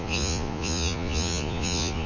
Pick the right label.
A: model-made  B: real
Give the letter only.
A